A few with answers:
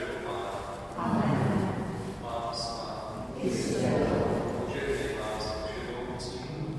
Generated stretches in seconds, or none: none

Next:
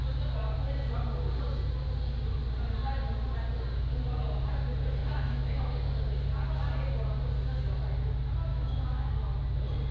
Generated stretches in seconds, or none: 5.0-5.6 (autoencoder, DAC-VAE); 8.5-9.1

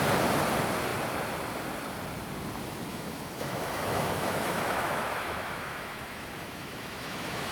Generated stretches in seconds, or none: 2.9-7.5 (autoencoder, DAC-VAE)

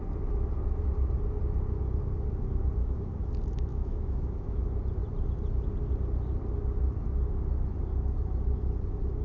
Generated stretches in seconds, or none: 2.8-3.3 (autoencoder, DAC-VAE); 3.7-4.6

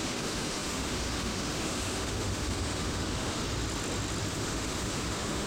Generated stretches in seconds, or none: 0.0-3.4 (autoencoder, DAC-VAE); 4.3-5.5